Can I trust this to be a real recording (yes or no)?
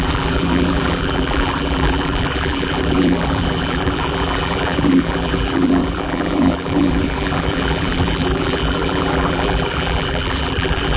no